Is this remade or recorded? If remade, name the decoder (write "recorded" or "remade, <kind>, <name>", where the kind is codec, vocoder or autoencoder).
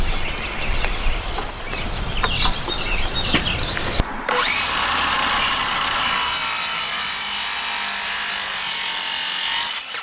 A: recorded